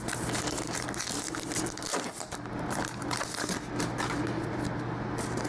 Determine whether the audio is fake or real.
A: real